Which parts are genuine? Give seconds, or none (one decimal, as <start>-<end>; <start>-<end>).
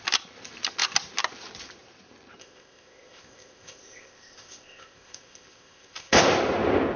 0.0-2.4; 6.2-7.0